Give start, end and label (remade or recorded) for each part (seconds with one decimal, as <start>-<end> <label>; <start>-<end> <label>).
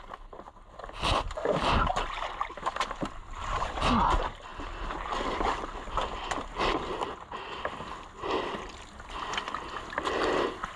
0.0-10.8 recorded